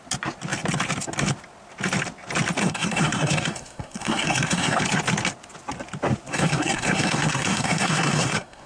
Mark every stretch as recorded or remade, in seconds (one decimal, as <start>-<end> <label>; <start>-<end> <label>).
0.0-2.6 recorded; 2.6-4.8 remade; 4.8-6.3 recorded; 6.3-8.7 remade